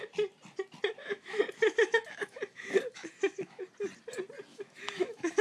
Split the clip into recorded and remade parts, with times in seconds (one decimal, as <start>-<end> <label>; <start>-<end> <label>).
0.0-1.0 recorded; 1.0-3.6 remade; 3.6-4.5 recorded; 4.5-5.4 remade